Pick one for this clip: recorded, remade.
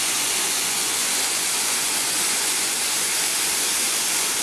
remade